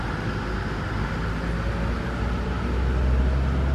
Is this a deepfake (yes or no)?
no